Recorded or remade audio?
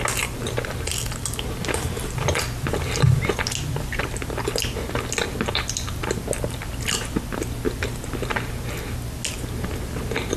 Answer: recorded